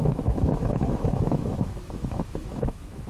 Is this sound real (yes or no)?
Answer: no